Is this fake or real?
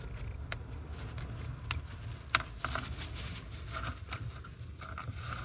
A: real